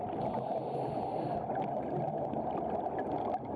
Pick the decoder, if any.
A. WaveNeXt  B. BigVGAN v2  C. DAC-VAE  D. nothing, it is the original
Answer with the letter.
D